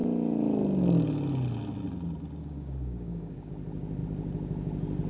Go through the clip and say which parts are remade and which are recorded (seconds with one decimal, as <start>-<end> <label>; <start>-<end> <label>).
0.0-2.4 recorded; 2.4-3.5 remade; 3.5-5.1 recorded